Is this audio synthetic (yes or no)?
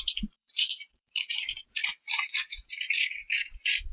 yes